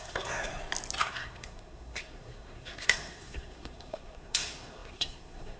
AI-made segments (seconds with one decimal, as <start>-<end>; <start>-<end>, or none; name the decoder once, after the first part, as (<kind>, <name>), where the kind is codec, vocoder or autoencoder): 0.0-0.5 (codec, SNAC); 1.0-5.6